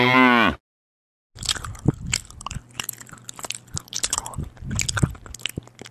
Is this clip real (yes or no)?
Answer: yes